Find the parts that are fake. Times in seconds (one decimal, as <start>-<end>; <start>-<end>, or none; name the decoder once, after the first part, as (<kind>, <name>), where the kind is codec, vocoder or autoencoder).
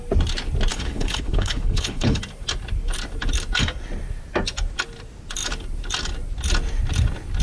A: 0.7-2.2 (codec, HILCodec)